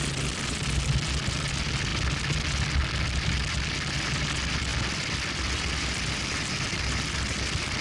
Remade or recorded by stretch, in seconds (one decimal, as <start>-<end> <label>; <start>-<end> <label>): 0.0-1.9 remade; 1.9-3.0 recorded; 3.0-7.8 remade